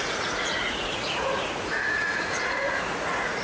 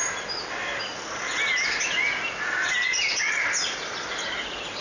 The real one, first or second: second